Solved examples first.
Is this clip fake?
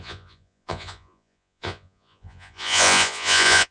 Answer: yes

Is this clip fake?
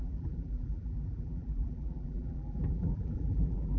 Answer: yes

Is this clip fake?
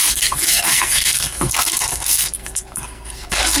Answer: yes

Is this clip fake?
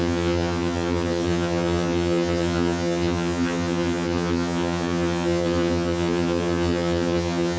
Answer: yes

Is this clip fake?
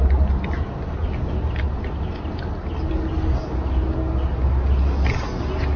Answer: no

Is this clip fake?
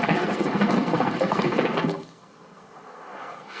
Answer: yes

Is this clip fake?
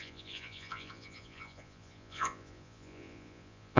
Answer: yes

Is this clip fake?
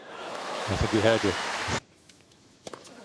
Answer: yes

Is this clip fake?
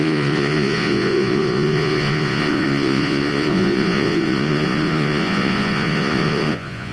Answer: yes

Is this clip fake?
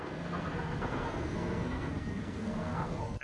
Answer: yes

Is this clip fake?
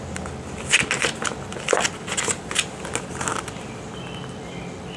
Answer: no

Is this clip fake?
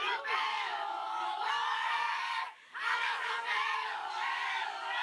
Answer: yes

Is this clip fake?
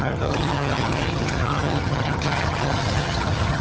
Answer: yes